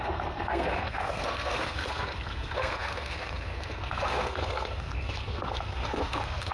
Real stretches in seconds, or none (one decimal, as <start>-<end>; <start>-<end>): none